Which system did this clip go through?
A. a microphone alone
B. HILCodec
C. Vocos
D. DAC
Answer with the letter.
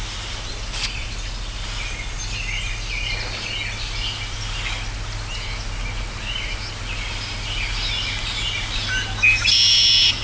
A